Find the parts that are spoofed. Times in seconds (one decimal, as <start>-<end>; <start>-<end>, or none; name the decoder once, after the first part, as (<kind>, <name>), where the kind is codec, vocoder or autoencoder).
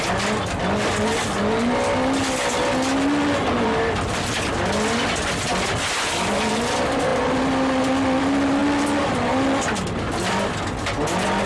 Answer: none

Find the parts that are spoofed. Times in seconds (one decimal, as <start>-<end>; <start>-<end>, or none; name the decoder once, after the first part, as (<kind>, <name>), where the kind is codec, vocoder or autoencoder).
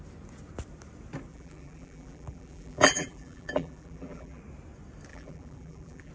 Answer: 1.3-4.4 (vocoder, BigVGAN v2); 5.1-6.1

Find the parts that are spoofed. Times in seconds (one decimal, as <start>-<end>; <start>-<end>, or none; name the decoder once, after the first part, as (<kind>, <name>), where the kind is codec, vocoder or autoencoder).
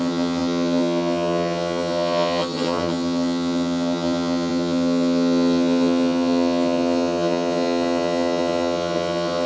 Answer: 0.0-9.5 (vocoder, HiFi-GAN)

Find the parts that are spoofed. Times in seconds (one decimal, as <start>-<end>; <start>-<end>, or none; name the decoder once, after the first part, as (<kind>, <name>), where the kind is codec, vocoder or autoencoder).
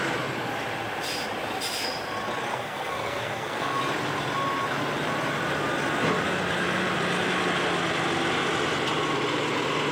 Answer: 2.5-3.8 (codec, SNAC)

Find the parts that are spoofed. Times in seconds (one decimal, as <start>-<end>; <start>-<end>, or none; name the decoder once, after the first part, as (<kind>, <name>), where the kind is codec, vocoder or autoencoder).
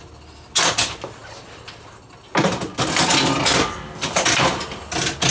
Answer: none